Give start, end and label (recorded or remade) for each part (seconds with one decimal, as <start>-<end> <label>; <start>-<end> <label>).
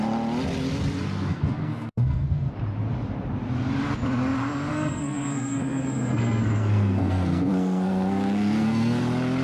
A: 0.0-1.3 recorded; 1.3-2.5 remade; 2.5-4.7 recorded; 4.7-9.0 remade; 9.0-9.4 recorded